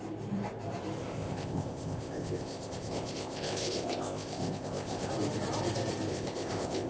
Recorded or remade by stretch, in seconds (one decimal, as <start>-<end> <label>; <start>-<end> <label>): 0.0-1.0 recorded; 1.0-5.1 remade; 5.1-6.1 recorded; 6.1-6.9 remade